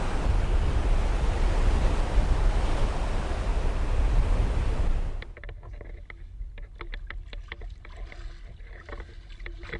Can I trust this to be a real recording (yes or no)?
yes